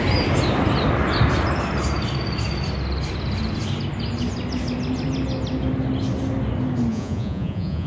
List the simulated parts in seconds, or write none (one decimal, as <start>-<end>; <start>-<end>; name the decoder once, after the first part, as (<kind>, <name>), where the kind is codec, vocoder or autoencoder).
6.9-7.9 (vocoder, Vocos)